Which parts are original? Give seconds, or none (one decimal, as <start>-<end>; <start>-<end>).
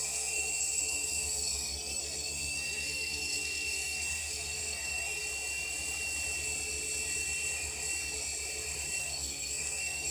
5.2-9.0